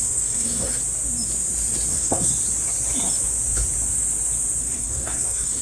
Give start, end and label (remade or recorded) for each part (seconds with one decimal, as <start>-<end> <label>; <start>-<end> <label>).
0.0-0.8 remade; 0.8-1.9 recorded; 1.9-2.3 remade; 2.3-4.6 recorded; 4.6-5.6 remade